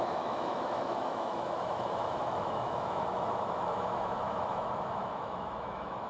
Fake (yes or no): yes